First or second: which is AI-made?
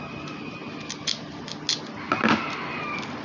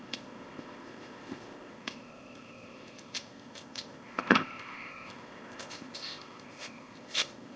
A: second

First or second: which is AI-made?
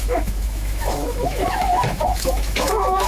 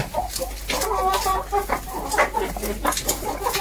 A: first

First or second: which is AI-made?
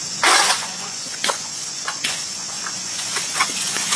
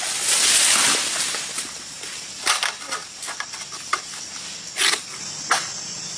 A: first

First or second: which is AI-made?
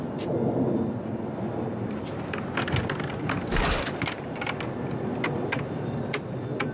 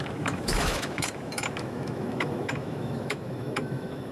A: second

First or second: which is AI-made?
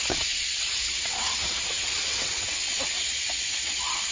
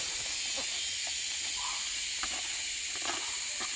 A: first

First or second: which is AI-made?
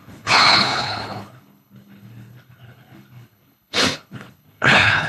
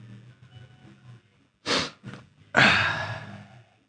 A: first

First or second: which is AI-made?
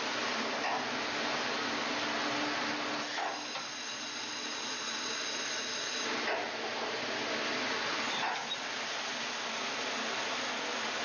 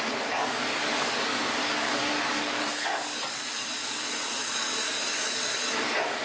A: second